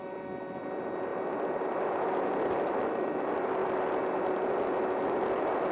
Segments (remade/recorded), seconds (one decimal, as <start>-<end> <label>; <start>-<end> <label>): 0.0-1.1 remade; 1.1-2.3 recorded; 2.3-3.6 remade; 3.6-4.3 recorded; 4.3-5.7 remade